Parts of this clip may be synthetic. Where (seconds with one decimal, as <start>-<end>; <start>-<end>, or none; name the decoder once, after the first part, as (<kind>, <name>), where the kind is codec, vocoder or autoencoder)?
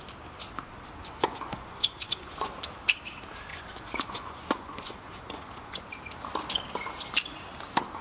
1.0-2.5 (vocoder, Vocos); 3.5-5.8